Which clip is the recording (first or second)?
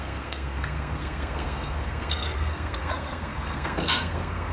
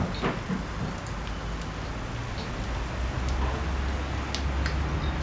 second